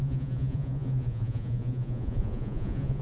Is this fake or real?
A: fake